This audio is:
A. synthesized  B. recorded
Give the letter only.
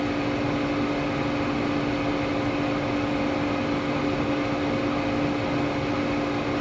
B